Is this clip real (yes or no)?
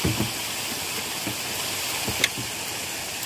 yes